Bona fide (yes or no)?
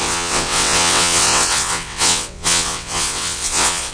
no